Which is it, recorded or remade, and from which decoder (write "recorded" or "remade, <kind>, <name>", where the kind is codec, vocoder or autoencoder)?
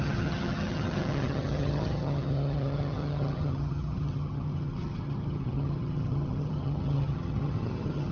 remade, vocoder, HiFi-GAN